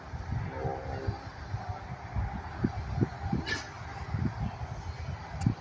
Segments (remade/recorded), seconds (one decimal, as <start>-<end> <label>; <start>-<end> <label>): 0.0-5.6 recorded